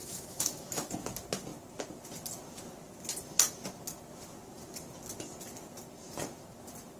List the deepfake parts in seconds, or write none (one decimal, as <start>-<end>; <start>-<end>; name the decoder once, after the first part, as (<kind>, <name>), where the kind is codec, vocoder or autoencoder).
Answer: 0.0-0.9 (autoencoder, DAC-VAE)